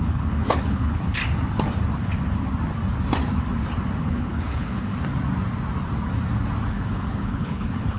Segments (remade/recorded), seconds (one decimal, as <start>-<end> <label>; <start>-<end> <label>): 0.0-1.2 remade; 1.2-4.0 recorded; 4.0-4.9 remade; 4.9-6.7 recorded; 6.7-8.0 remade

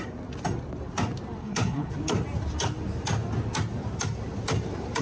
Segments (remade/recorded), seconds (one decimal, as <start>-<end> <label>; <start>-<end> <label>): 0.0-1.4 recorded; 1.4-1.9 remade; 1.9-5.0 recorded